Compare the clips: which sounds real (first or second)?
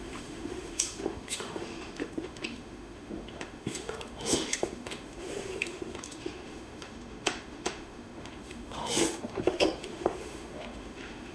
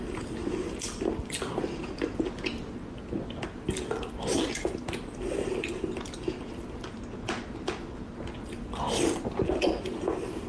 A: second